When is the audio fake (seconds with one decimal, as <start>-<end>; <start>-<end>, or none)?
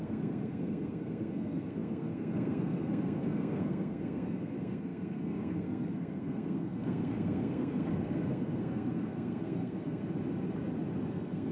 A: 0.0-10.0; 11.1-11.5